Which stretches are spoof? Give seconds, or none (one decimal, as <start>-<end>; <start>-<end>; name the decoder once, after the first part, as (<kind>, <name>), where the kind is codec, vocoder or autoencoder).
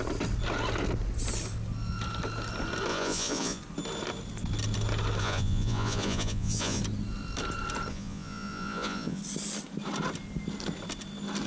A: 2.9-3.6 (vocoder, Vocos); 5.2-6.8; 7.9-9.2